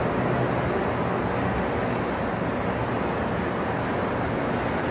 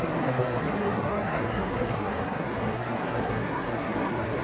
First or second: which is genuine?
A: first